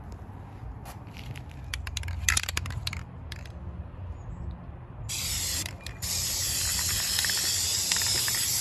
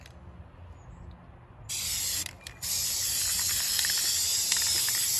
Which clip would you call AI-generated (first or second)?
first